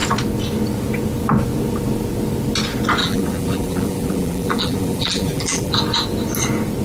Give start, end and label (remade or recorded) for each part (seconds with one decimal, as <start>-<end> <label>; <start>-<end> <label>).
0.0-3.0 recorded; 3.0-5.7 remade; 5.7-6.8 recorded